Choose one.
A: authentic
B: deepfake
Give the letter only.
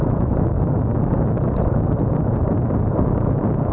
A